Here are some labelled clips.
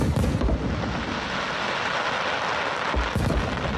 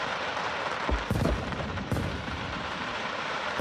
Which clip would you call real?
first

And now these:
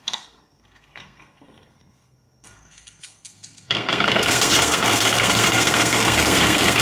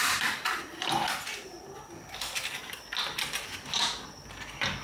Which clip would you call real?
second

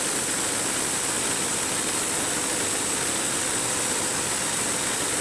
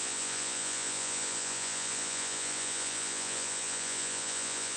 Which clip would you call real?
first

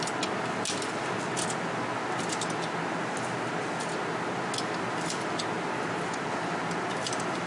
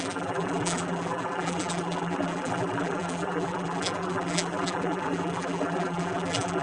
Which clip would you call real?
first